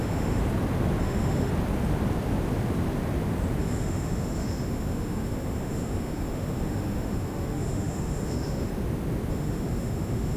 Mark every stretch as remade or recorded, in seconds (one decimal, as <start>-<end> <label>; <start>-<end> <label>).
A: 0.0-0.4 remade; 0.4-1.0 recorded; 1.0-1.5 remade; 1.5-3.6 recorded; 3.6-8.7 remade; 8.7-9.3 recorded; 9.3-10.4 remade